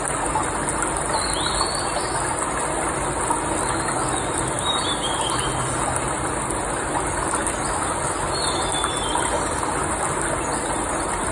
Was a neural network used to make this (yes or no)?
no